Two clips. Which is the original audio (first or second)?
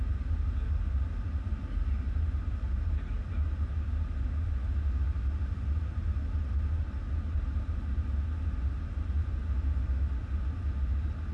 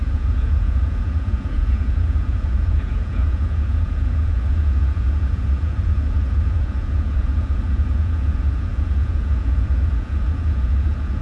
first